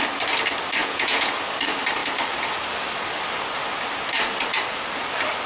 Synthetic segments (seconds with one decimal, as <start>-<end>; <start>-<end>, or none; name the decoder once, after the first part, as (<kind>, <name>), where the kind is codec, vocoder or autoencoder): 0.8-1.3 (vocoder, Vocos)